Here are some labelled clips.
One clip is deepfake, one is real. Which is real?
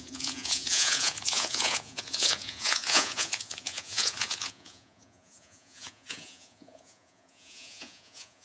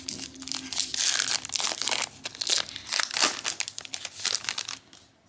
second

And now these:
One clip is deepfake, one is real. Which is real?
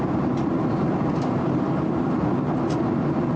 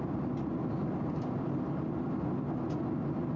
second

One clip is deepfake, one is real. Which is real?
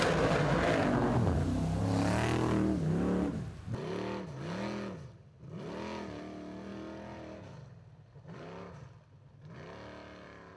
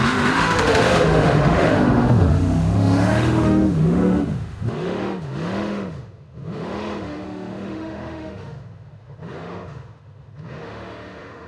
first